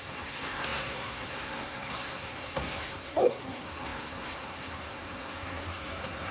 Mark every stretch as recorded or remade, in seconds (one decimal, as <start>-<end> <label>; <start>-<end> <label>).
0.0-6.3 remade